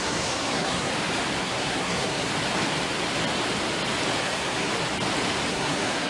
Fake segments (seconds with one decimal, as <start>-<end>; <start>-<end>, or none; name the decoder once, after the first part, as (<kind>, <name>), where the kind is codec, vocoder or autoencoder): 0.0-0.9 (codec, SNAC); 1.4-2.3; 4.2-4.7; 5.5-6.1